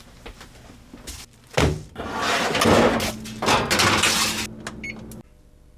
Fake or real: real